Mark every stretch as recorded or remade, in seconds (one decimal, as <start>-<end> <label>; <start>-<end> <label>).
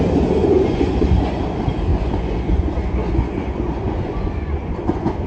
0.0-0.4 recorded; 0.4-1.4 remade; 1.4-1.9 recorded; 1.9-5.3 remade